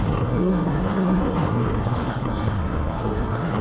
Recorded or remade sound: remade